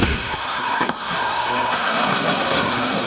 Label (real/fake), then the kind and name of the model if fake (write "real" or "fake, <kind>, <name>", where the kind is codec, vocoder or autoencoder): fake, codec, SNAC